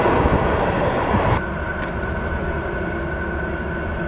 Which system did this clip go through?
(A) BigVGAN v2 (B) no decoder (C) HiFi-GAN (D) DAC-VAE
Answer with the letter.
B